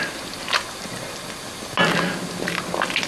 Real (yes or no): yes